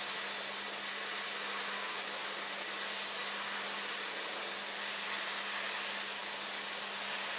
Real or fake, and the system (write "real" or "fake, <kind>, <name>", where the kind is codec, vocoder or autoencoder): real